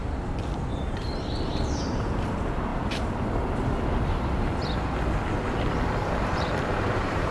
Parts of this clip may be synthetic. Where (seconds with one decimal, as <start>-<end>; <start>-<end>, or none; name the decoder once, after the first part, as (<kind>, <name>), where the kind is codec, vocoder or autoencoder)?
0.8-2.7 (vocoder, BigVGAN v2); 6.1-7.3